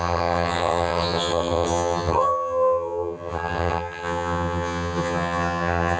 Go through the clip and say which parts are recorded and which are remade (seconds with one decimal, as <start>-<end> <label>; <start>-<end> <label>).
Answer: 0.0-6.0 remade